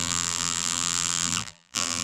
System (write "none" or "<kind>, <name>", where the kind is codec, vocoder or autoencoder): vocoder, BigVGAN v2